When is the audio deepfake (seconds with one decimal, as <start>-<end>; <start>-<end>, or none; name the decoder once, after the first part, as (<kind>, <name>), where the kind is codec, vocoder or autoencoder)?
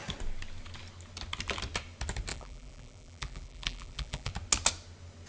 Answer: 2.3-4.3 (vocoder, BigVGAN v2)